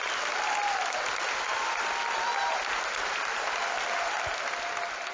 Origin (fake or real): real